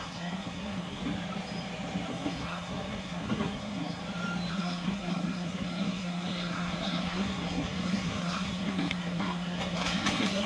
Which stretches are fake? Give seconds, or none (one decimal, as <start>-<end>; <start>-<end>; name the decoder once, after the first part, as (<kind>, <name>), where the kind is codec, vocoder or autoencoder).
0.0-1.0 (codec, SNAC); 2.1-4.0; 4.5-10.5